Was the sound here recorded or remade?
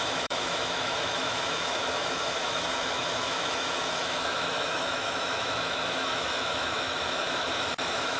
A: remade